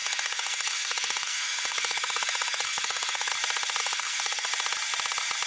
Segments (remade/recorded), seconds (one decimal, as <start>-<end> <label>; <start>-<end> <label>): 0.0-3.3 remade; 3.3-3.8 recorded; 3.8-4.5 remade; 4.5-5.5 recorded